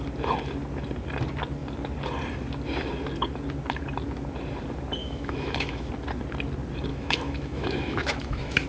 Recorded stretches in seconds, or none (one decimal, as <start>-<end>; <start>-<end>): 0.0-5.0; 5.9-6.9